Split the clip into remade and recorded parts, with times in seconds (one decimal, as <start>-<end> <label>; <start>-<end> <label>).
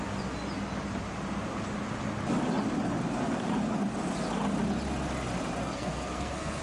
0.0-5.6 recorded; 5.6-6.6 remade